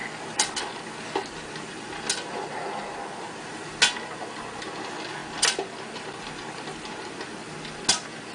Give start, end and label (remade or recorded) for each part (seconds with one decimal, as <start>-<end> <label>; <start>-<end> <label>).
0.0-8.3 recorded